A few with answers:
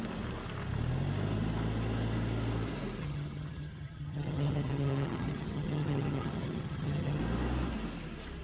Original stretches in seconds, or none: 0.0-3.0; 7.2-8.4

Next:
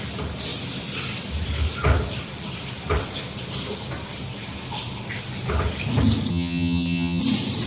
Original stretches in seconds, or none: 0.0-6.3; 7.2-7.7

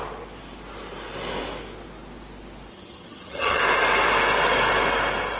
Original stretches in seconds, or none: 0.0-2.7; 3.6-5.4

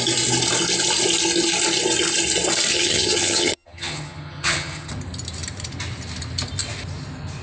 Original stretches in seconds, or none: 0.0-2.7; 4.9-7.4

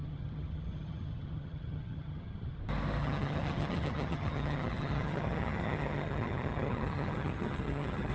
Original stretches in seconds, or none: 2.6-3.0

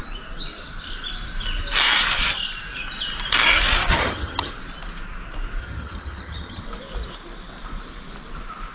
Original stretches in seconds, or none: 0.0-3.9; 4.5-5.6; 6.6-8.7

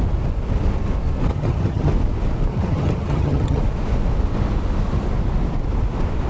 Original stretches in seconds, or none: 0.0-1.3; 1.9-2.5; 3.6-6.3

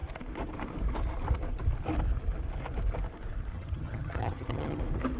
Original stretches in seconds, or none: 0.0-3.5; 4.8-5.2